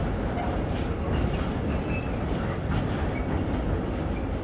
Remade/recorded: recorded